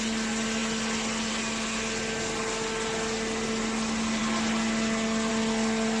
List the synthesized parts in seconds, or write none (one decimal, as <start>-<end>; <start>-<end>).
none